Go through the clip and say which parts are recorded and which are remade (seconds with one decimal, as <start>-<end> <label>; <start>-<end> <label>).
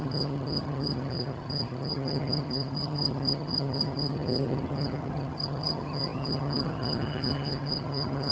0.0-8.3 remade